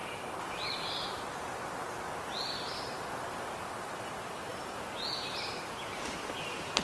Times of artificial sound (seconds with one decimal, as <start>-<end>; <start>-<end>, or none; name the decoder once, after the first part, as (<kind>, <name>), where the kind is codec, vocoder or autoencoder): 4.5-5.5 (vocoder, BigVGAN v2)